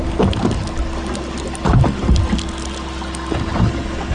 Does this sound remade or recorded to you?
recorded